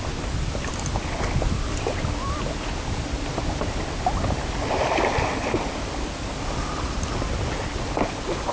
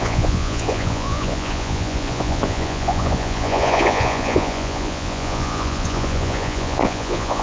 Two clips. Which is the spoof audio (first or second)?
second